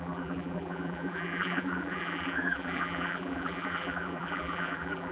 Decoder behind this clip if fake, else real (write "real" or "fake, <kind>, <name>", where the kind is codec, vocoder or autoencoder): fake, vocoder, BigVGAN v2